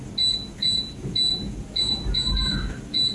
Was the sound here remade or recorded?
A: recorded